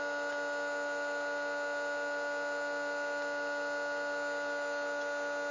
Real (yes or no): yes